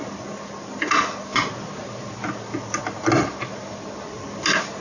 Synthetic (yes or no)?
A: no